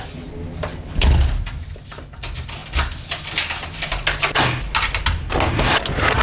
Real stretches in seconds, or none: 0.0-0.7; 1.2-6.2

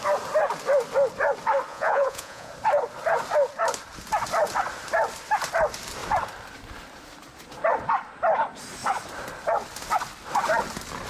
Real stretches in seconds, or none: 0.0-1.7; 2.5-11.1